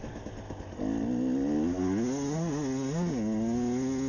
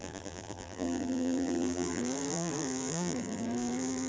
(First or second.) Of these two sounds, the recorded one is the first